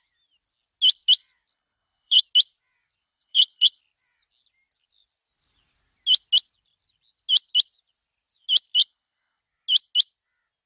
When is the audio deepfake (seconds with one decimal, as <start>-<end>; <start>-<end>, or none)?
1.5-2.2; 3.0-3.8; 8.8-9.4